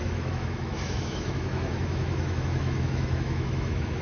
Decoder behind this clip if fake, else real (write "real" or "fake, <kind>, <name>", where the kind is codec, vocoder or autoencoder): fake, autoencoder, DAC-VAE